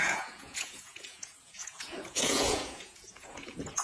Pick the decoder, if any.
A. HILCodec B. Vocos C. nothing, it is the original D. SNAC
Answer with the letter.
B